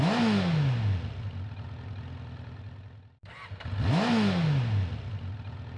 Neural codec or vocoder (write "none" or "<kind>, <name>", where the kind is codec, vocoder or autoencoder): none